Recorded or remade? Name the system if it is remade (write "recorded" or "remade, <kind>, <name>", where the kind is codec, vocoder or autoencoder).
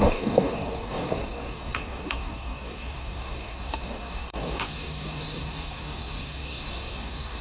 remade, codec, DAC